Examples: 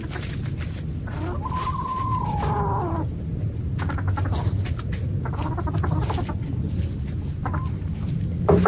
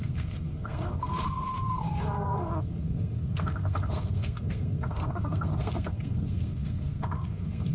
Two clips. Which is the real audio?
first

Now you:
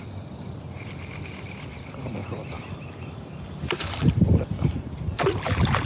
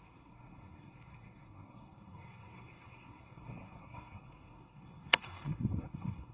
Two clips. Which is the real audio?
first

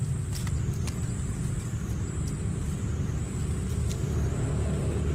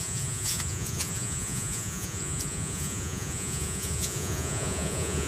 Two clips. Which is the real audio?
first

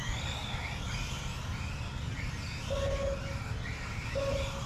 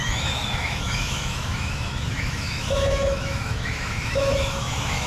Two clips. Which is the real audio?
first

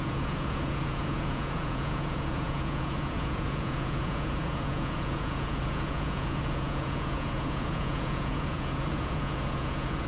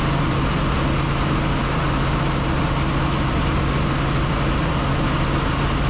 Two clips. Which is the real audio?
second